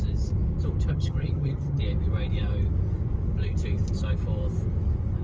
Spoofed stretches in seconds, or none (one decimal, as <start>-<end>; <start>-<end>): 0.9-1.8